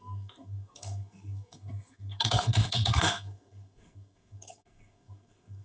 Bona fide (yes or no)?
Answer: no